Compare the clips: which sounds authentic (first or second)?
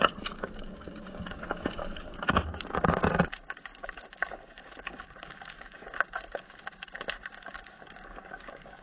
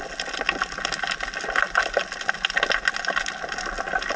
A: second